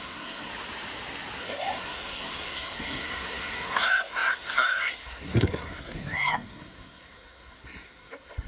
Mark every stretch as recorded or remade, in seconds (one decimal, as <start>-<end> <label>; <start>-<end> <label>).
0.0-0.5 remade; 0.5-1.4 recorded; 1.4-8.5 remade